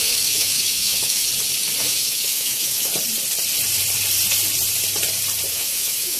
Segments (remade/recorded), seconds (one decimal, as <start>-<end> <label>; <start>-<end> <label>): 0.0-1.3 remade; 1.3-1.8 recorded; 1.8-2.9 remade; 2.9-5.5 recorded; 5.5-6.2 remade